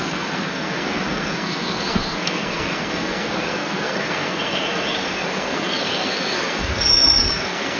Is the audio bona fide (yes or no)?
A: no